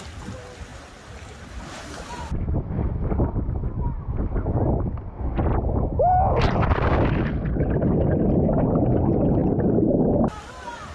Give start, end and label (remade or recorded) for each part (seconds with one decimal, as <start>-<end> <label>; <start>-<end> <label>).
0.0-0.7 recorded; 0.7-2.9 remade; 2.9-10.9 recorded